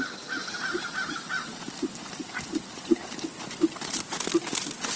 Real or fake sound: real